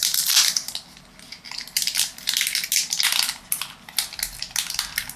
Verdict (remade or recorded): recorded